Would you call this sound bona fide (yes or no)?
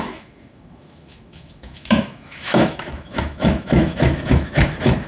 no